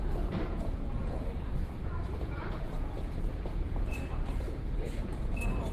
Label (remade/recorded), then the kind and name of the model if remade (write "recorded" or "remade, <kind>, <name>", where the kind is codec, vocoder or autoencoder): remade, vocoder, Vocos